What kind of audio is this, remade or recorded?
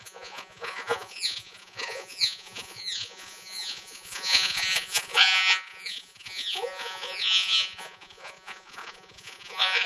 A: remade